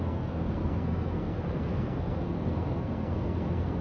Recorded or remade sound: remade